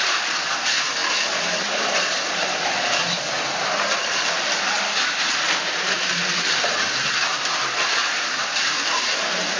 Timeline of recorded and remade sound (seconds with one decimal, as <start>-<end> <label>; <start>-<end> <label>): 0.0-6.2 remade; 6.2-7.7 recorded; 7.7-9.6 remade